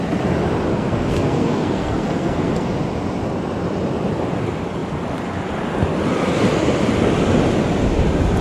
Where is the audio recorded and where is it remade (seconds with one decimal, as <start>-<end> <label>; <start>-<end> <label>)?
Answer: 0.0-0.7 recorded; 0.7-2.7 remade; 2.7-8.4 recorded